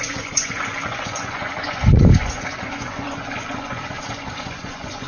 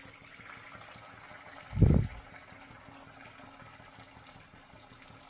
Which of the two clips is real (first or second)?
second